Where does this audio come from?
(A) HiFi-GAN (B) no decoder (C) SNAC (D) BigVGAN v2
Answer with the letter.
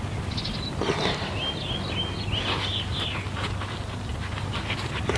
B